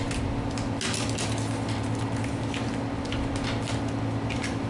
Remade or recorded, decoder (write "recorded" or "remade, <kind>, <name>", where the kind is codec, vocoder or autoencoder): recorded